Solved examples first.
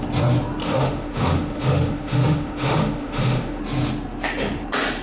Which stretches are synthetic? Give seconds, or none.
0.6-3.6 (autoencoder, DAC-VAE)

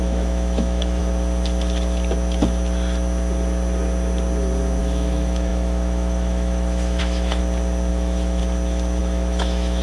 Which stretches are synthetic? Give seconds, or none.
0.0-1.0 (autoencoder, DAC-VAE); 4.8-7.4; 7.9-8.4; 9.0-9.8